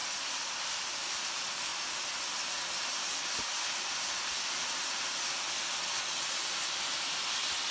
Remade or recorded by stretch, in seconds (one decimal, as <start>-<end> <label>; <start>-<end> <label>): 0.0-7.7 recorded